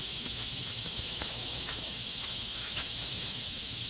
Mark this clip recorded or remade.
remade